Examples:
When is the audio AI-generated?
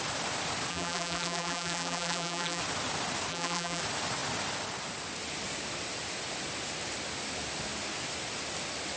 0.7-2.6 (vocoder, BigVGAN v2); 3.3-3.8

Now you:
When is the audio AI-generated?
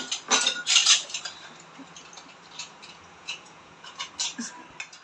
2.6-4.1 (vocoder, Vocos)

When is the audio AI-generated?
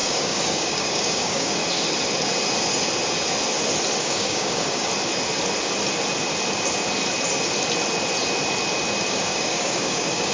0.0-1.6 (codec, DAC); 4.0-4.9; 9.1-10.3